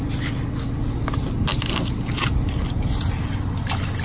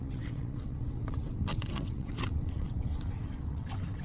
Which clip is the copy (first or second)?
second